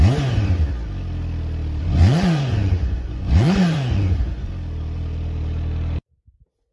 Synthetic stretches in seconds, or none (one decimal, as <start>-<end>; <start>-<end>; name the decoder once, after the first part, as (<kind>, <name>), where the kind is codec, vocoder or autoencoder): 1.8-4.5 (vocoder, Vocos)